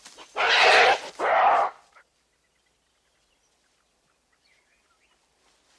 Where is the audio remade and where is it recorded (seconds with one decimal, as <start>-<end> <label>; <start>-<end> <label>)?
0.0-1.5 recorded; 1.5-5.0 remade; 5.0-5.8 recorded